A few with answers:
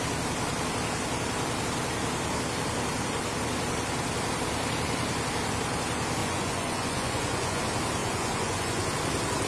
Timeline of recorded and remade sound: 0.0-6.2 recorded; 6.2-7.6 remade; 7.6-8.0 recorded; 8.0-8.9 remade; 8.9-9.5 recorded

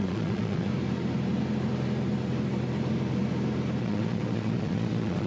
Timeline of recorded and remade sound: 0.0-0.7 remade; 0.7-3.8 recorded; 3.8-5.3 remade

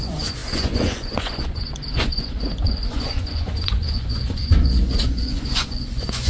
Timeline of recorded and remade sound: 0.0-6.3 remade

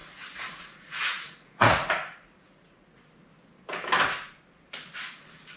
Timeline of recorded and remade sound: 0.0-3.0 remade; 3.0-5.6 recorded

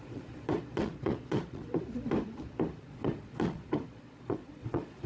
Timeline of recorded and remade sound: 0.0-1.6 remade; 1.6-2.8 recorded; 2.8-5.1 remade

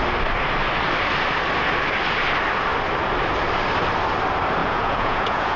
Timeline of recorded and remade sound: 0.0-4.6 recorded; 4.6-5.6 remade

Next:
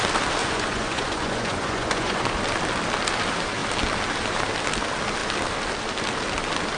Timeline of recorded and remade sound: 0.0-0.4 recorded; 0.4-2.2 remade; 2.2-6.8 recorded